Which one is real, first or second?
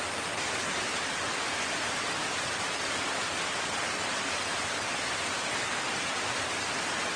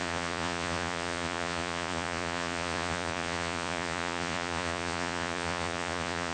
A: first